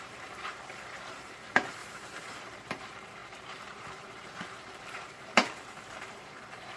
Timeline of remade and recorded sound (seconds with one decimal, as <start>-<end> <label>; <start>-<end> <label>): 0.0-6.8 remade